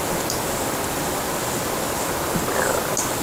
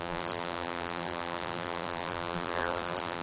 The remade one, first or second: second